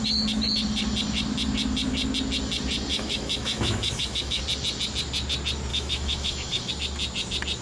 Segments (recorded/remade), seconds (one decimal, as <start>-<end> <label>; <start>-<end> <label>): 0.0-2.9 recorded; 2.9-4.4 remade; 4.4-5.7 recorded; 5.7-6.7 remade; 6.7-7.6 recorded

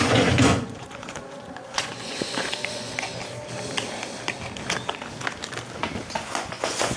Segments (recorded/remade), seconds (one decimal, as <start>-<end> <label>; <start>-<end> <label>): 0.0-3.1 remade; 3.1-6.2 recorded; 6.2-7.0 remade

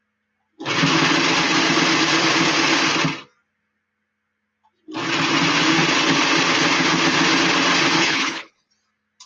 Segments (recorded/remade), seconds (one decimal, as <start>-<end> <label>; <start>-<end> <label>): 0.0-8.0 recorded; 8.0-8.7 remade; 8.7-9.3 recorded

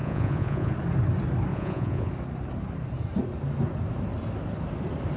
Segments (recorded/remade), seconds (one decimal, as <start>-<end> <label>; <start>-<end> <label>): 0.0-0.7 remade; 0.7-1.5 recorded; 1.5-2.1 remade; 2.1-5.2 recorded

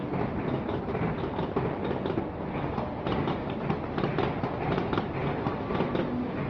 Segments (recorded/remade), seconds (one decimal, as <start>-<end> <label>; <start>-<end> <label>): 0.0-6.5 recorded

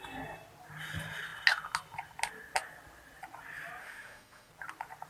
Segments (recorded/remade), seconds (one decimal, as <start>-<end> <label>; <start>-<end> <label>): 0.0-3.8 recorded; 3.8-4.5 remade; 4.5-5.1 recorded

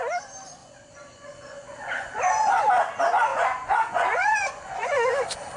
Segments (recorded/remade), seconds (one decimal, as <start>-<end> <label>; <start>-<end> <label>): 0.0-0.6 recorded; 0.6-2.6 remade; 2.6-3.3 recorded; 3.3-5.1 remade; 5.1-5.6 recorded

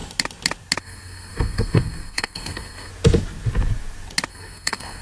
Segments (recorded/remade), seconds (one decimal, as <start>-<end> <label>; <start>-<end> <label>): 0.0-0.8 recorded; 0.8-2.9 remade; 2.9-4.3 recorded; 4.3-5.0 remade